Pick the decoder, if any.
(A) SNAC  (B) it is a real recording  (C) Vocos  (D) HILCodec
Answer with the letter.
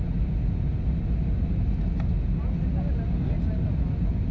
B